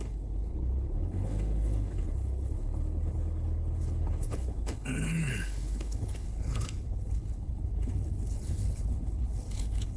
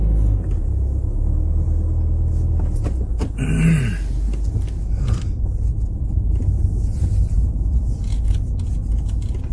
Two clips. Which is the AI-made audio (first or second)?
first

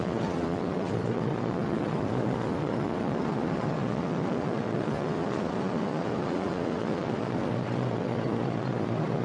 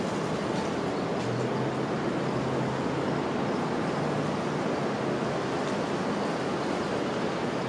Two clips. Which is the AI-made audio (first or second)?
first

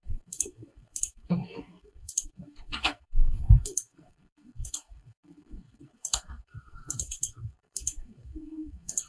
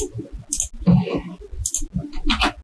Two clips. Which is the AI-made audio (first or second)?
first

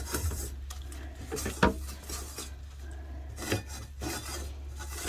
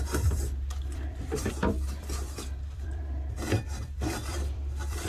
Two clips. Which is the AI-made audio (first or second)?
second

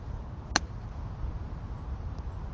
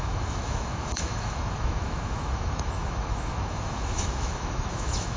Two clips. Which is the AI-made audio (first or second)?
second